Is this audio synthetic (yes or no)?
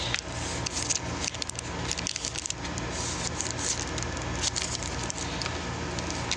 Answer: no